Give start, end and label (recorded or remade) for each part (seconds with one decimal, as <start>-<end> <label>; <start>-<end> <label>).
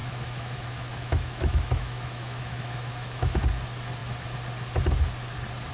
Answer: 0.0-3.4 remade; 3.4-5.7 recorded